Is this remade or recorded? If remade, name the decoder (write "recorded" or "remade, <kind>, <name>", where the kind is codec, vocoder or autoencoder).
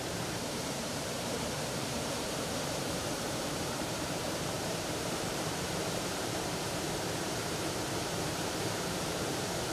remade, vocoder, BigVGAN v2